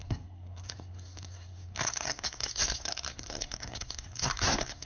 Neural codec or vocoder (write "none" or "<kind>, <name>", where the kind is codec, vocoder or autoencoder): codec, SNAC